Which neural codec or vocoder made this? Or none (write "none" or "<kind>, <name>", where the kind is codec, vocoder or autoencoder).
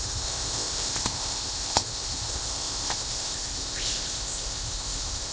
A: codec, ZipCodec